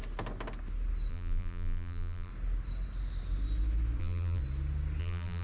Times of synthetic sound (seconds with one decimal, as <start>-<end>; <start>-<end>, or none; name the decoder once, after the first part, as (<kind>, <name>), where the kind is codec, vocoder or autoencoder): 1.1-2.3 (vocoder, BigVGAN v2); 4.0-4.4; 5.0-5.4